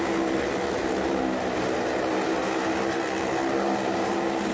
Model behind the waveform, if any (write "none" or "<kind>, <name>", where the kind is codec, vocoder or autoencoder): none